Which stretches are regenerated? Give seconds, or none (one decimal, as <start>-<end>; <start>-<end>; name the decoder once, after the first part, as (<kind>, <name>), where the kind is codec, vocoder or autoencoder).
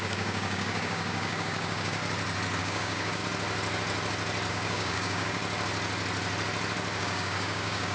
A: 0.0-2.0 (codec, DAC); 2.6-3.2; 4.5-5.4; 7.0-7.9